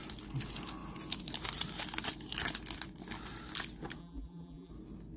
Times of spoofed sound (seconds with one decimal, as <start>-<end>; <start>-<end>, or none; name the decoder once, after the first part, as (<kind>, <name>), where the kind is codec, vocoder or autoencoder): 4.0-4.7 (vocoder, BigVGAN v2)